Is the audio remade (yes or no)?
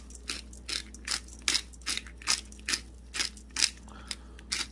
no